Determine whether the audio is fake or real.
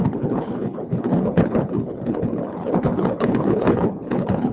fake